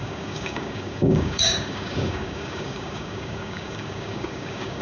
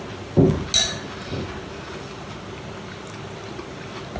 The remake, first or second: first